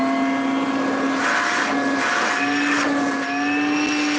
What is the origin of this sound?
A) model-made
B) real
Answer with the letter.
B